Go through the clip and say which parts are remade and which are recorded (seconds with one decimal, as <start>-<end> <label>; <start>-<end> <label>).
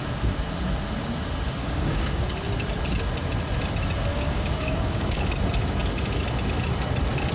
0.0-1.6 recorded; 1.6-2.3 remade; 2.3-4.1 recorded; 4.1-5.2 remade; 5.2-7.3 recorded